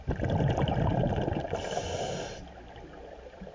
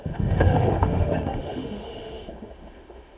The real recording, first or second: first